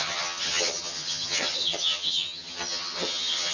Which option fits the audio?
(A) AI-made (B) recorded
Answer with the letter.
A